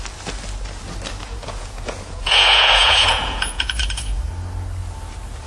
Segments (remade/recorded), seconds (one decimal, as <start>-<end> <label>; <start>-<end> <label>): 0.0-1.2 recorded; 1.2-4.2 remade; 4.2-5.5 recorded